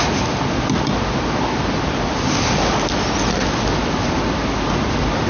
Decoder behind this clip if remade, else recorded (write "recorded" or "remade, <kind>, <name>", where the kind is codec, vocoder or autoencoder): recorded